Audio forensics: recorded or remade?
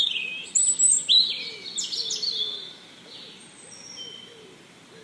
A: recorded